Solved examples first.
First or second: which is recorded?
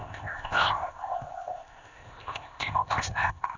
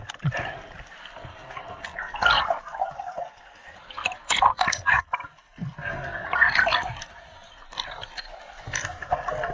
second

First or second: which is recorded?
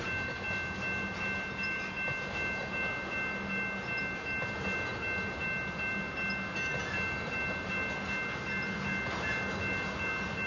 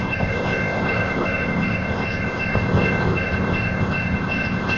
first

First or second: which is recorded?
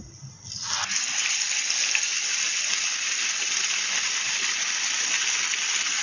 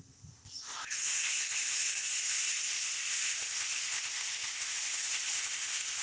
first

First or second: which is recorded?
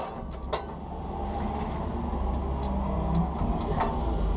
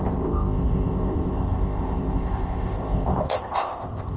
first